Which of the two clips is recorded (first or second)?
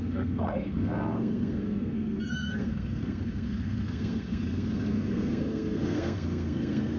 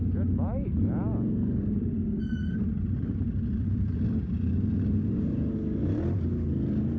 second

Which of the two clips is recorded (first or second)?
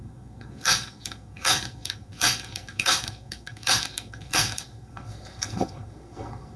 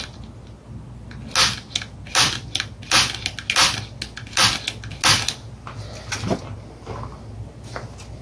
second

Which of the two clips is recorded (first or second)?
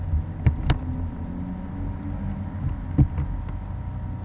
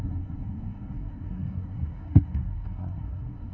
first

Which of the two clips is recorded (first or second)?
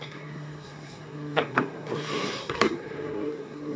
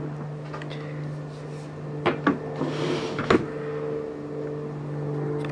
second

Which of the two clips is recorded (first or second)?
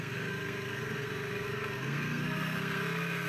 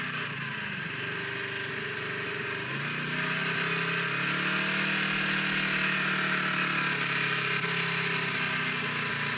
second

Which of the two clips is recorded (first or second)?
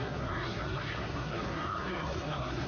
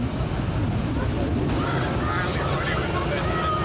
second